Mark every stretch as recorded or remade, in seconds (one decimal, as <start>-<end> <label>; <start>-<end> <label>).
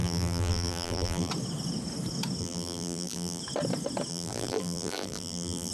0.0-1.3 remade; 1.3-2.4 recorded; 2.4-3.4 remade; 3.4-4.1 recorded; 4.1-5.7 remade